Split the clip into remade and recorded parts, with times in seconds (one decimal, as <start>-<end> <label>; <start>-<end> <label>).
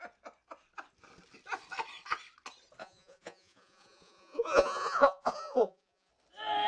0.0-2.8 recorded; 2.8-6.1 remade; 6.1-6.7 recorded